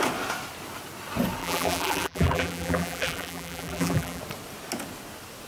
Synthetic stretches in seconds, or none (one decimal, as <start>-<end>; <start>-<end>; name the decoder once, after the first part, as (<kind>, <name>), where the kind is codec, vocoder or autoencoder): 1.4-4.2 (vocoder, BigVGAN v2)